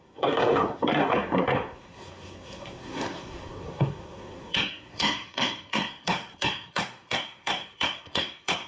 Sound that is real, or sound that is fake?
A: fake